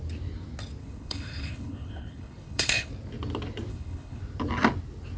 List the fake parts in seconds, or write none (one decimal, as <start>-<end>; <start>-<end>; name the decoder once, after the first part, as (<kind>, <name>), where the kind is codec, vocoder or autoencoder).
0.8-2.9 (codec, HILCodec); 3.7-4.2